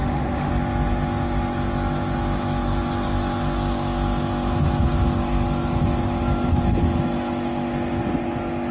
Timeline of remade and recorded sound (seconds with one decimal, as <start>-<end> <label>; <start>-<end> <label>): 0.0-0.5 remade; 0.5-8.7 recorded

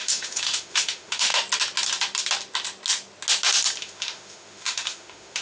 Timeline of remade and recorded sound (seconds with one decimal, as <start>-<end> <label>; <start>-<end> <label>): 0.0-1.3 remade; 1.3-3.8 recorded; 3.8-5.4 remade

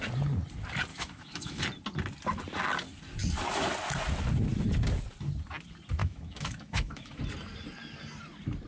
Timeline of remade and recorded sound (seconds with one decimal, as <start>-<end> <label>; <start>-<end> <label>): 0.0-0.9 recorded; 0.9-1.6 remade; 1.6-6.0 recorded; 6.0-7.2 remade; 7.2-8.7 recorded

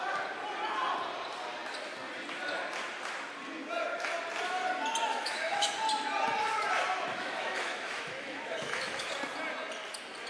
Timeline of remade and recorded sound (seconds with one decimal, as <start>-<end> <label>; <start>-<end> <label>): 0.0-5.1 recorded; 5.1-5.7 remade; 5.7-7.1 recorded; 7.1-9.1 remade; 9.1-10.3 recorded

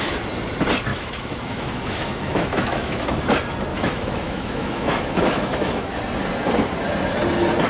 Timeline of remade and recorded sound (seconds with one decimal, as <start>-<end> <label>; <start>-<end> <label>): 0.0-0.9 recorded; 0.9-3.2 remade; 3.2-3.7 recorded; 3.7-5.9 remade; 5.9-7.7 recorded

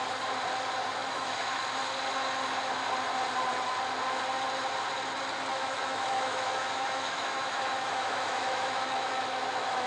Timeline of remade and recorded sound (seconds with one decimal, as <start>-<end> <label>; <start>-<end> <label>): 0.0-1.0 recorded; 1.0-1.6 remade; 1.6-5.5 recorded; 5.5-9.9 remade